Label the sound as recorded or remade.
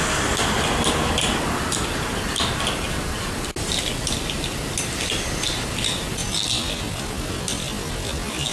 recorded